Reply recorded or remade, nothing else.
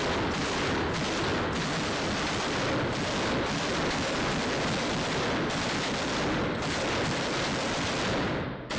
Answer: recorded